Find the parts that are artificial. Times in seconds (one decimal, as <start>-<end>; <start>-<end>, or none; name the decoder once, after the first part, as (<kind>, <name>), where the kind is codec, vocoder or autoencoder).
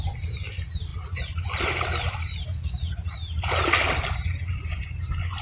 none